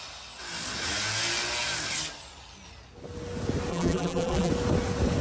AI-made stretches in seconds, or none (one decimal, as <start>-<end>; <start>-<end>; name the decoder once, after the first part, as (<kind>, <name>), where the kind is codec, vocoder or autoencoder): 3.7-4.5 (vocoder, BigVGAN v2)